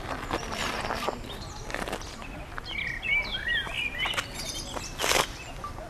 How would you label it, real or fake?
fake